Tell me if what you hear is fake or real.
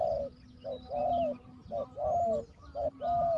real